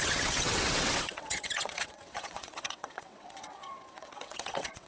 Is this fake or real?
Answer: fake